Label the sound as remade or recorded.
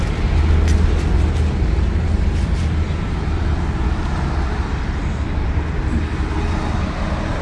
recorded